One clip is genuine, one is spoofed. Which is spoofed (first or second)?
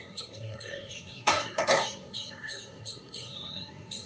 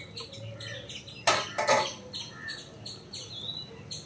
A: first